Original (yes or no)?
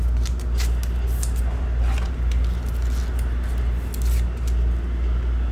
yes